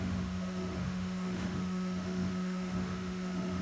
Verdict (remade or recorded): remade